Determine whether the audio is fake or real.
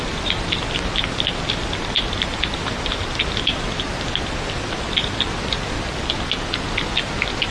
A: real